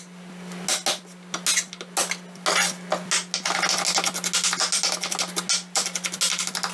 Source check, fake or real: real